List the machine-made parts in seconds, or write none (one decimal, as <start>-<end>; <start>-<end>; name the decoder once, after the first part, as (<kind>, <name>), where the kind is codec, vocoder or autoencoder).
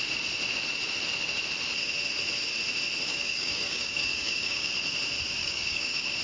3.1-4.7 (codec, DAC); 5.4-6.2